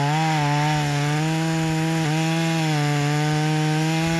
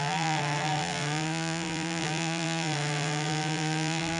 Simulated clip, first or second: second